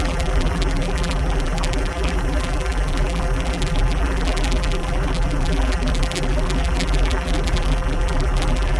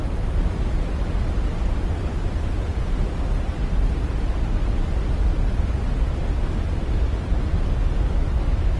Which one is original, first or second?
second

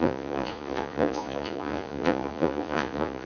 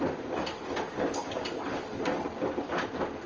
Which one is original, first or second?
second